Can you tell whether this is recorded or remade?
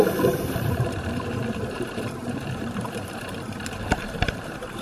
remade